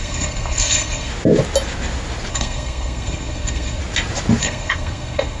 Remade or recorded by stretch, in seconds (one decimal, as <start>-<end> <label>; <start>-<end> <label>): 0.0-1.1 remade; 1.1-2.3 recorded; 2.3-3.8 remade; 3.8-4.4 recorded; 4.4-5.4 remade